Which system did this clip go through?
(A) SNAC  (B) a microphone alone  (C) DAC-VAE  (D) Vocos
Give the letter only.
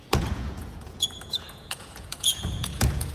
D